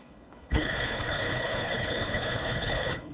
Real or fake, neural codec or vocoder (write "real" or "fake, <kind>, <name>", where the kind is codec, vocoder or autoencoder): fake, codec, HILCodec